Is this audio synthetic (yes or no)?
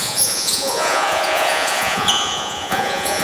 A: yes